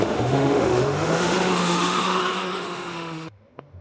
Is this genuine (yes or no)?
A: no